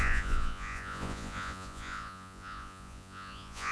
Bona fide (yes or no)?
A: no